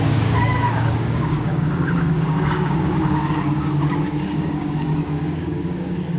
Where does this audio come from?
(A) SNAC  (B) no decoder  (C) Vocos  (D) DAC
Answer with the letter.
D